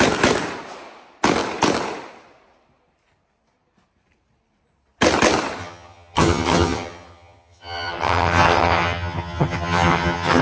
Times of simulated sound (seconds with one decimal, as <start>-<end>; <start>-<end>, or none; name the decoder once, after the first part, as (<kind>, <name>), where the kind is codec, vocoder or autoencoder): 5.6-10.4 (vocoder, HiFi-GAN)